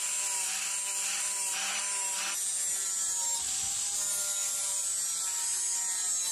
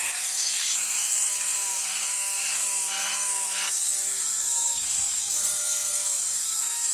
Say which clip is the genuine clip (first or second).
first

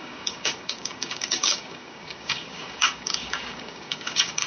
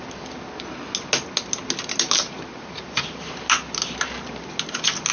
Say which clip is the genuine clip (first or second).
second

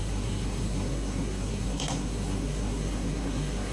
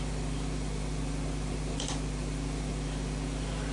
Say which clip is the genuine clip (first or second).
second